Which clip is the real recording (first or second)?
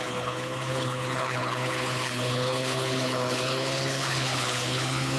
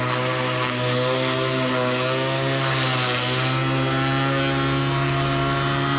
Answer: second